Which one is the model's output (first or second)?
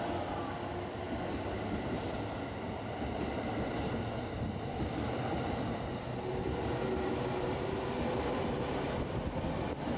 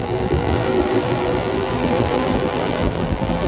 second